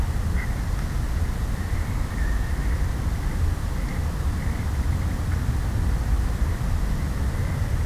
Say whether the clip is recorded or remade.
recorded